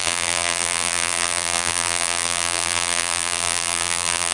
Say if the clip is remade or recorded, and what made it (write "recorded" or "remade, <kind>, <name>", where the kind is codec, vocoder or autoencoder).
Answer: remade, vocoder, BigVGAN v2